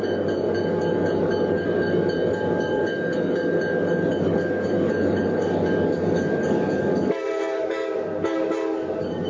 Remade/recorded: remade